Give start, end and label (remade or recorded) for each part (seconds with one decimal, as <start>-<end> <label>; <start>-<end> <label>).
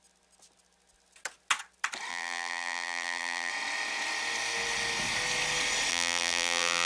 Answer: 0.0-2.1 recorded; 2.1-3.5 remade; 3.5-5.9 recorded; 5.9-6.9 remade